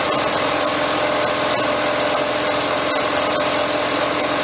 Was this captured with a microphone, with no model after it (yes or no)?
yes